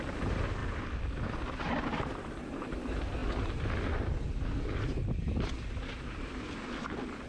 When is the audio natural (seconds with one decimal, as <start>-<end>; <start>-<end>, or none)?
0.0-3.2; 4.6-7.3